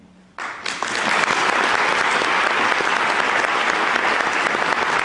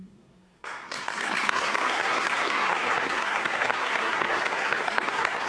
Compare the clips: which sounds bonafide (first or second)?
first